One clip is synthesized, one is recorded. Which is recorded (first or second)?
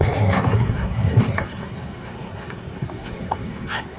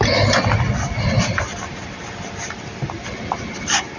second